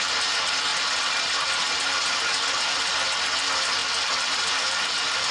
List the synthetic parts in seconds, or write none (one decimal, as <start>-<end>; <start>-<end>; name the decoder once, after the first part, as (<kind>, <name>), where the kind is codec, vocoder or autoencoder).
0.7-1.3 (vocoder, BigVGAN v2); 2.3-2.9; 3.8-4.5